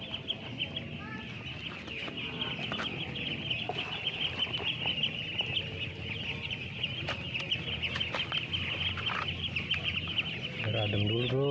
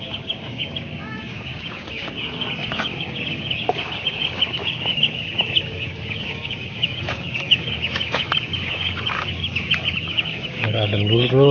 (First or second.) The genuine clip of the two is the first